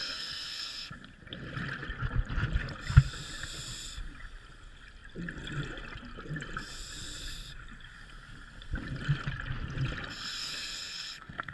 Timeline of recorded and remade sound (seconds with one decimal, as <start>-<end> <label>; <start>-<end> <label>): 0.0-0.9 remade; 0.9-10.4 recorded; 10.4-11.5 remade

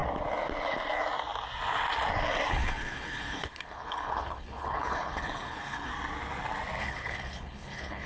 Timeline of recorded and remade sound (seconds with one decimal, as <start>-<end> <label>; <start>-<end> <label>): 0.0-2.5 recorded; 2.5-5.9 remade; 5.9-6.8 recorded; 6.8-8.1 remade

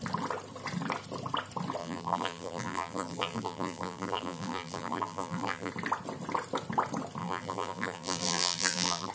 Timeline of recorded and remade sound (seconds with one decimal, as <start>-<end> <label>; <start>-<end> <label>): 0.0-1.8 recorded; 1.8-5.7 remade; 5.7-7.2 recorded; 7.2-9.1 remade